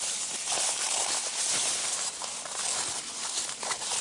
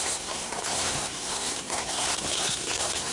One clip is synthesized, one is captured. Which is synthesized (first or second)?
second